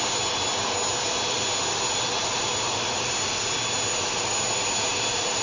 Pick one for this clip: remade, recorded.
recorded